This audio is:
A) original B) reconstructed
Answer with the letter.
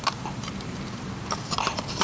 B